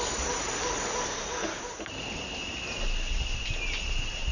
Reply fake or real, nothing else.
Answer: real